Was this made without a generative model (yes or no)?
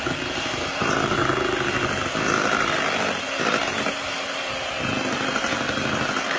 yes